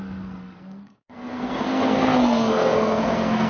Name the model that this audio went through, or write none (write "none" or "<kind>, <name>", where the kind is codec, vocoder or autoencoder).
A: codec, SNAC